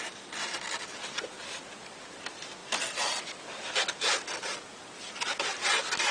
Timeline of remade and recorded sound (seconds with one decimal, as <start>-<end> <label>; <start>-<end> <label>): 0.0-2.6 remade; 2.6-4.7 recorded; 4.7-5.5 remade; 5.5-6.1 recorded